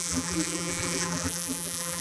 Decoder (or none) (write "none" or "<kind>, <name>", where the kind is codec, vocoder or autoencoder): vocoder, BigVGAN v2